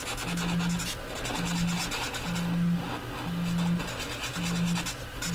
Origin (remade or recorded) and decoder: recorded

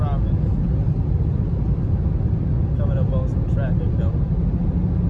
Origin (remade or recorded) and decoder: recorded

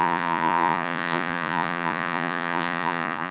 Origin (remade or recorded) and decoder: remade, vocoder, Vocos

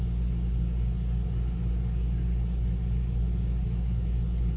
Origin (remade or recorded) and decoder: recorded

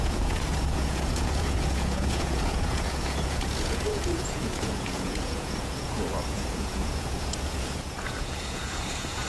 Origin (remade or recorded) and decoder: remade, vocoder, Vocos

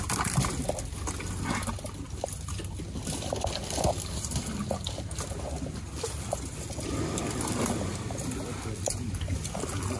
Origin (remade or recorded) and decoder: recorded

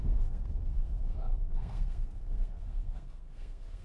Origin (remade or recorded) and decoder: remade, codec, SNAC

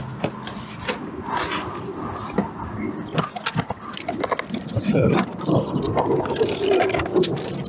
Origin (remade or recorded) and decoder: recorded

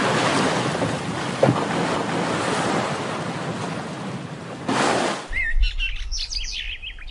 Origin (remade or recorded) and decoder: recorded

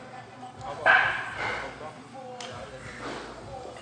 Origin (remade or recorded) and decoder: recorded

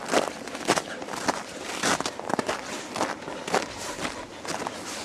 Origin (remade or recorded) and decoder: recorded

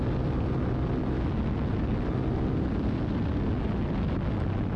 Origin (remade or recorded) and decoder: recorded